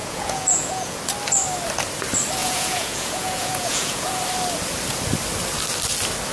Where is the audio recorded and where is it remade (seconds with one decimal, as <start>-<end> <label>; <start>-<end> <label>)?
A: 0.0-1.0 remade; 1.0-2.4 recorded; 2.4-4.2 remade; 4.2-6.3 recorded